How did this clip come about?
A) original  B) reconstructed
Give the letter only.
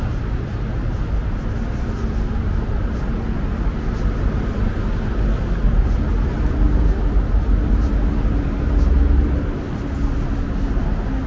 A